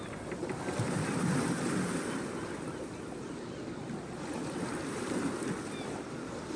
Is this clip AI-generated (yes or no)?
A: no